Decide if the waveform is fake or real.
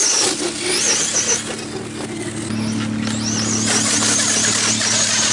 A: real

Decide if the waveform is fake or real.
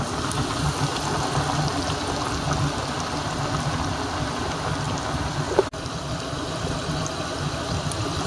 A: real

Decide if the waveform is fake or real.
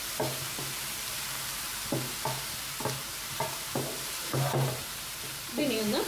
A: fake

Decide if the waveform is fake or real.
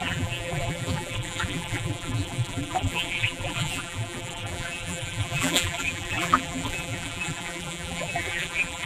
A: fake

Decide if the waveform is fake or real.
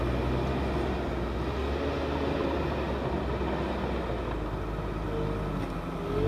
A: real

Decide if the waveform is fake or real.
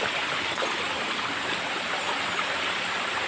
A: real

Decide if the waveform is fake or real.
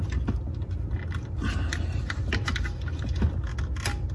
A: real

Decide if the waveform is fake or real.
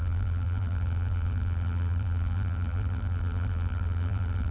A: fake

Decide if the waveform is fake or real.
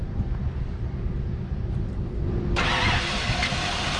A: fake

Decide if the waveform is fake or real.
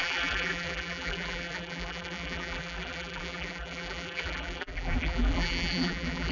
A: fake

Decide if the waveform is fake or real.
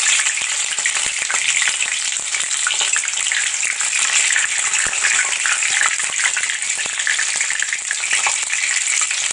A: fake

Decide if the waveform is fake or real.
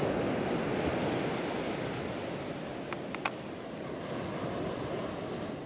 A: real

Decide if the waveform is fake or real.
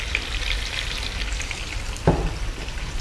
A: fake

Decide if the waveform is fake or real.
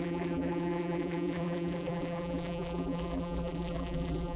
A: fake